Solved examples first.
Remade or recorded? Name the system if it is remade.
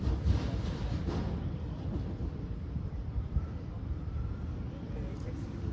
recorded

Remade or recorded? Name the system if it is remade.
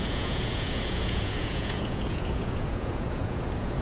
remade, vocoder, Vocos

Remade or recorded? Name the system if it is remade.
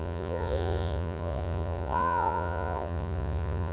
remade, vocoder, Vocos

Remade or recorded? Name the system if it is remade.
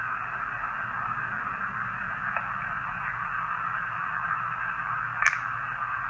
recorded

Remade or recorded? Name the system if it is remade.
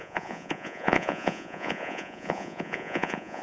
remade, vocoder, Vocos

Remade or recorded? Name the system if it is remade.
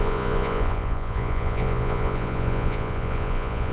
remade, vocoder, Vocos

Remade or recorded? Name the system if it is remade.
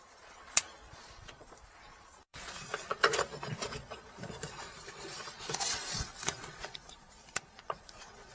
remade, vocoder, Vocos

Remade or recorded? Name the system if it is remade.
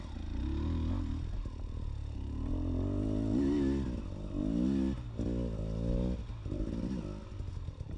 recorded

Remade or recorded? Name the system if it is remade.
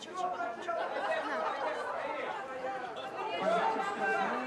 recorded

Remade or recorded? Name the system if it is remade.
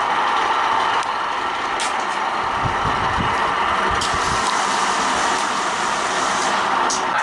recorded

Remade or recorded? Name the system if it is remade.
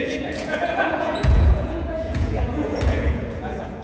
remade, vocoder, Vocos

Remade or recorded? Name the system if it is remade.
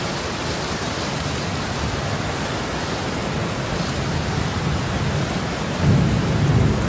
recorded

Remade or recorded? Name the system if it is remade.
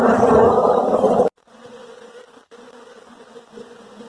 remade, vocoder, Vocos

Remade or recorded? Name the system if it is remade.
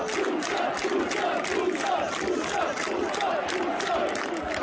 recorded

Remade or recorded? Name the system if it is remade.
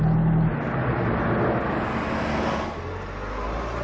recorded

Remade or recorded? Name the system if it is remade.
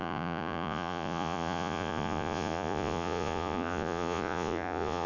remade, vocoder, Vocos